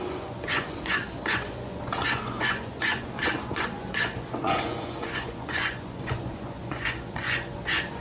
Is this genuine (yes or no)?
no